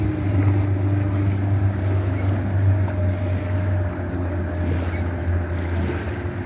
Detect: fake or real real